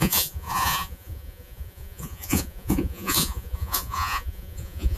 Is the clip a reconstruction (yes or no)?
yes